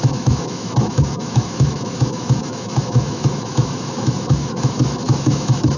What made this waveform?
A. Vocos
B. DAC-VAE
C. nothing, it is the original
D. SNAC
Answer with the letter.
B